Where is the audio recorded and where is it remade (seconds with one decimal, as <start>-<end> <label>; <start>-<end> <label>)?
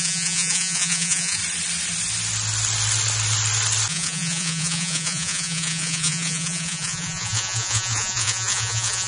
0.0-1.4 remade; 1.4-3.9 recorded; 3.9-9.1 remade